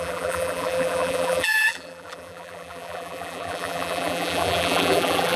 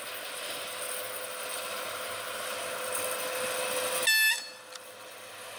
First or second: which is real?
second